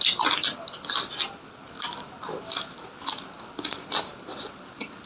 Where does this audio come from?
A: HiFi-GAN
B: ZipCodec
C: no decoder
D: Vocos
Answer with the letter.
C